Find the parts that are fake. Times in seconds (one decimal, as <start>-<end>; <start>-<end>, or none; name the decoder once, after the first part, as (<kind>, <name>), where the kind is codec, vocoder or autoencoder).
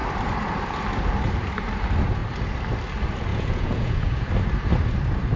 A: 3.3-4.3 (vocoder, Vocos)